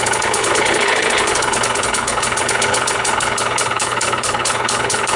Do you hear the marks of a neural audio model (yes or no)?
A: yes